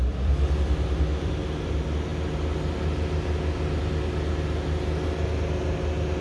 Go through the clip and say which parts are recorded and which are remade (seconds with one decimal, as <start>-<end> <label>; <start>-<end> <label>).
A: 0.0-1.3 remade; 1.3-6.2 recorded